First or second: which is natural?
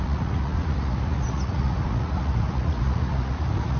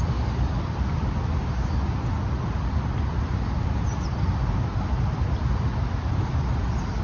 second